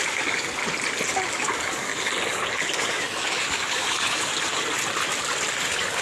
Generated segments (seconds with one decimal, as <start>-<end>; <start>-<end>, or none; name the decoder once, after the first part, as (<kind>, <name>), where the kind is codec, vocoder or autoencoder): 0.0-0.6 (codec, DAC); 1.3-1.9; 2.8-4.3; 5.5-6.0